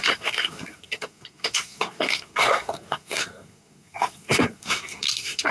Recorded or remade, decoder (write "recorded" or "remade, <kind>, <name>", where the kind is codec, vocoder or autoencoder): remade, codec, SNAC